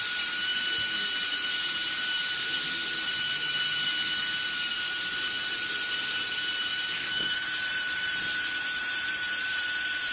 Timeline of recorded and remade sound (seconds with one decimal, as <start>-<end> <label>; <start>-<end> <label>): 0.0-3.9 remade; 3.9-4.7 recorded; 4.7-6.7 remade; 6.7-7.2 recorded; 7.2-10.1 remade